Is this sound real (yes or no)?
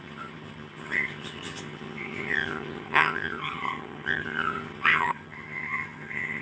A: no